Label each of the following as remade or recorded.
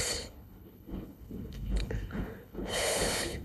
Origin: remade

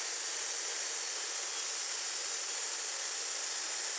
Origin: recorded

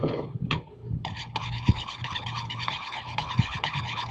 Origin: remade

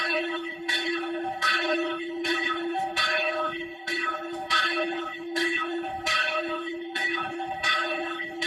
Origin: remade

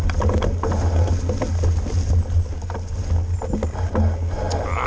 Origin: recorded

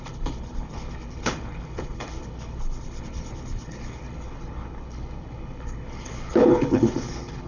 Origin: remade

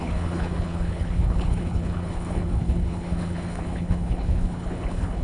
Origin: remade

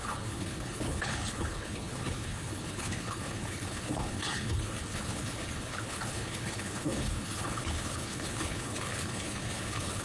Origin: remade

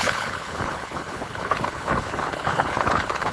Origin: remade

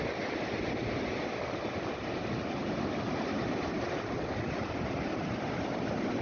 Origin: recorded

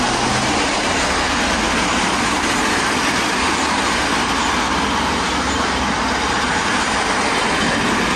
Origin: recorded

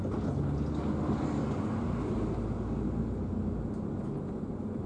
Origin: recorded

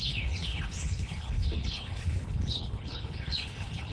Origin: remade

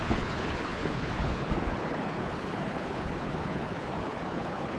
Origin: remade